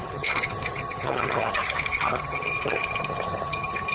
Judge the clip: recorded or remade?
remade